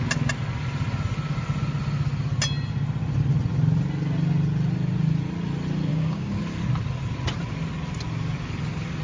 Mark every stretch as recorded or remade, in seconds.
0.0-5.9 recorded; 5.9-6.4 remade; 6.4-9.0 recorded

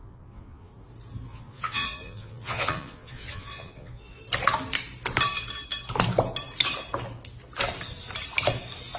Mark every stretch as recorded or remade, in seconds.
0.0-0.7 remade; 0.7-1.3 recorded; 1.3-4.2 remade; 4.2-9.0 recorded